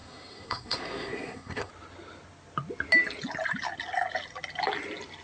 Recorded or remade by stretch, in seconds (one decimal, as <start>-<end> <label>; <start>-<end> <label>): 0.0-1.7 remade; 1.7-5.2 recorded